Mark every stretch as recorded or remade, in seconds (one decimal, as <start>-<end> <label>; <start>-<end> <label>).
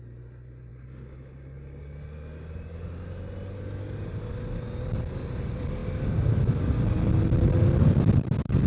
0.0-8.7 recorded